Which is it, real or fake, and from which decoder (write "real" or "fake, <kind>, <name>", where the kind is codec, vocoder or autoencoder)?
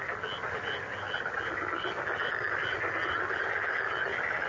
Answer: real